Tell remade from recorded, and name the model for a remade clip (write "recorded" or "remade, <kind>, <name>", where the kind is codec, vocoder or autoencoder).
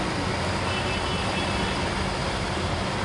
recorded